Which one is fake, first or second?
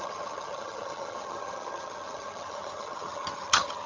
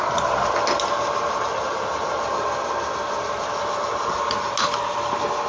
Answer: first